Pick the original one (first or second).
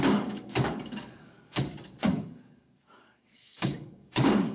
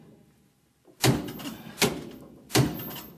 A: second